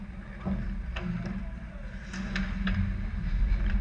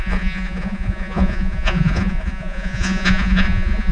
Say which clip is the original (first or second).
first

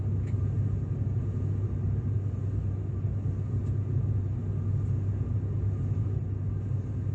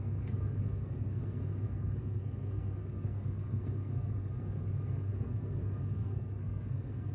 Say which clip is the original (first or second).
first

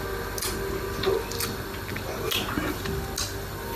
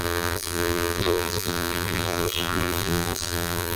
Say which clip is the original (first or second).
first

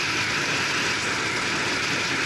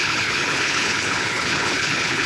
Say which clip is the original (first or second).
first